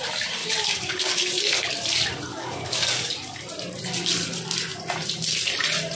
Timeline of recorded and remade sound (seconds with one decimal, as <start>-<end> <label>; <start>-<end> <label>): 0.0-0.4 recorded; 0.4-1.7 remade; 1.7-2.3 recorded; 2.3-3.1 remade; 3.1-5.9 recorded